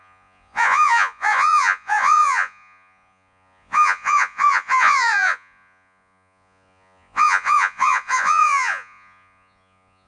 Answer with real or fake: fake